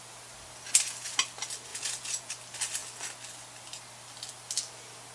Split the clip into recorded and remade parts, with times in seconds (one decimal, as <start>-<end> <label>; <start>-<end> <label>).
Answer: 0.0-1.7 recorded; 1.7-2.3 remade; 2.3-5.1 recorded